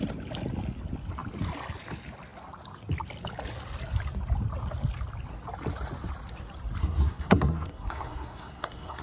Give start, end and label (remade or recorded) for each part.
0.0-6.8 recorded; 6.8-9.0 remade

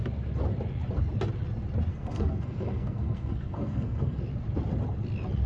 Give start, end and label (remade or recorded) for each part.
0.0-1.9 recorded; 1.9-4.2 remade; 4.2-5.5 recorded